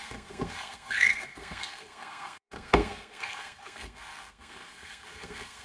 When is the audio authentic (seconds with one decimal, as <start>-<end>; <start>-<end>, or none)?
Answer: none